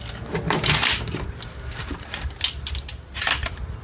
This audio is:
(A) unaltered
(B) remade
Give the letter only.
A